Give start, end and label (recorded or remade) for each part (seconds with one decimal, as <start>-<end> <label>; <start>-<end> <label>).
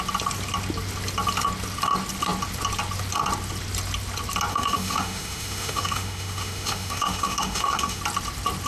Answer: 0.0-4.5 recorded; 4.5-8.0 remade; 8.0-8.7 recorded